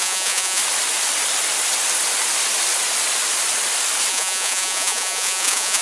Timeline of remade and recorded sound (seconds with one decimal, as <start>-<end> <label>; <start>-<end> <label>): 0.0-0.6 remade; 0.6-4.1 recorded; 4.1-5.8 remade